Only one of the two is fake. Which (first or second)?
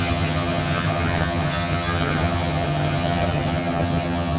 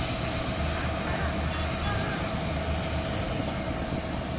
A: first